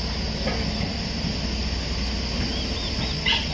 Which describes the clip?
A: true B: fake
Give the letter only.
A